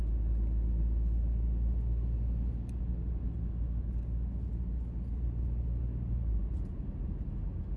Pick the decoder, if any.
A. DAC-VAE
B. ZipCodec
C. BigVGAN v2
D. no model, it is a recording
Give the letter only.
D